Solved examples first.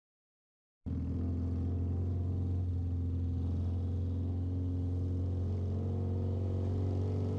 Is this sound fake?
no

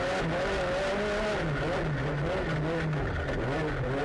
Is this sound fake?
no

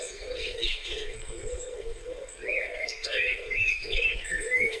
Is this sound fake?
yes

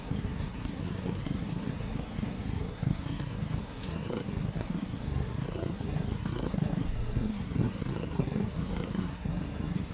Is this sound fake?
yes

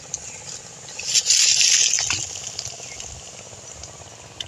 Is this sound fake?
no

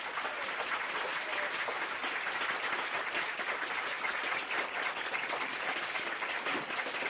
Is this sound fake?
no